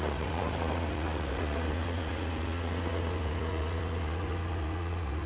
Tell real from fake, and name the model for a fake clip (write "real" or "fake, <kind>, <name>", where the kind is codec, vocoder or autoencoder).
fake, vocoder, Vocos